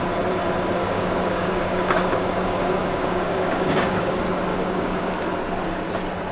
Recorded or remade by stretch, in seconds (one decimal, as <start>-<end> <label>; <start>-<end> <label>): 0.0-0.8 recorded; 0.8-4.1 remade; 4.1-4.5 recorded; 4.5-5.1 remade; 5.1-6.3 recorded